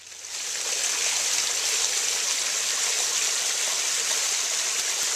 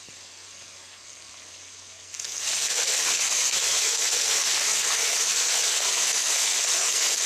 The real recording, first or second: first